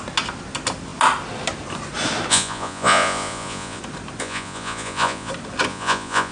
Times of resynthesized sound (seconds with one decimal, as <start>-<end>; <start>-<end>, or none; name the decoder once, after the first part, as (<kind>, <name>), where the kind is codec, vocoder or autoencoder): 2.3-3.8 (vocoder, Vocos); 4.2-5.3; 5.7-6.3